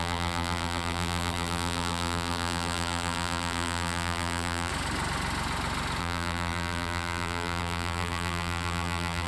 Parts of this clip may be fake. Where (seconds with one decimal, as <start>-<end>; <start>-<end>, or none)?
0.0-4.7; 6.0-9.3